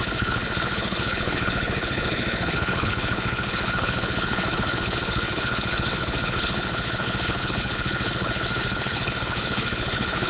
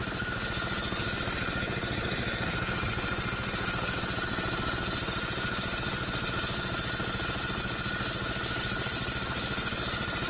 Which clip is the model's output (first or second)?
first